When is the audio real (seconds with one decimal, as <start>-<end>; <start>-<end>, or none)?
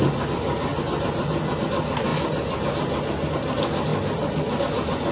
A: 0.0-5.1